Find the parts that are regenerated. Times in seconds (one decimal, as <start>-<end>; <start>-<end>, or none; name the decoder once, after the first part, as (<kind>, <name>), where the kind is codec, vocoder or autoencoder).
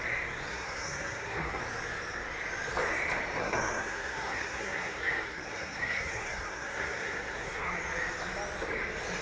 0.5-1.6 (codec, SNAC); 3.4-7.7